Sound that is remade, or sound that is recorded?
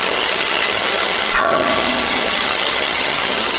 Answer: remade